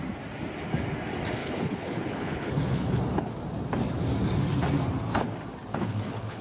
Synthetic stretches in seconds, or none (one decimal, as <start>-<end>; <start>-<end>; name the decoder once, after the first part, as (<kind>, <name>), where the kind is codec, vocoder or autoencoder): 1.4-3.0 (codec, HILCodec); 5.7-6.4